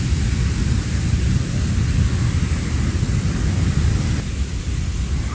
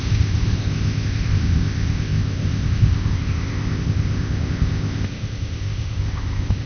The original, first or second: first